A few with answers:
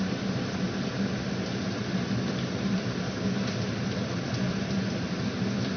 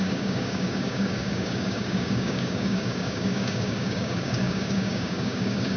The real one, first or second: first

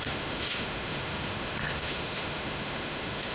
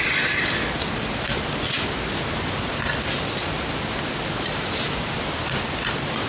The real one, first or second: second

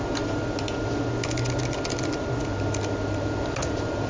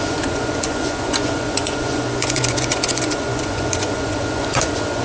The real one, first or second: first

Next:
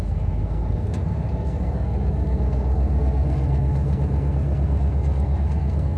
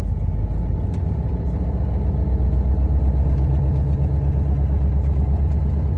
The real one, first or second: second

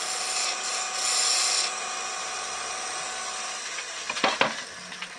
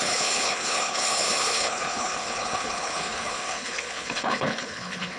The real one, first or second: first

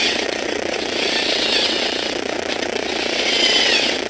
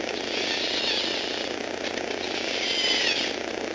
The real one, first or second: second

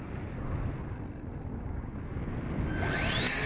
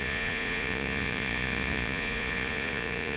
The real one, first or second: first